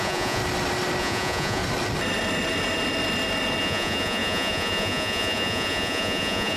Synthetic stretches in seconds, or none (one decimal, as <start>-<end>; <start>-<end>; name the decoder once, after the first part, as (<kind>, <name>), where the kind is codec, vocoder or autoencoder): 0.0-0.4 (vocoder, Vocos); 1.0-1.6; 3.6-6.6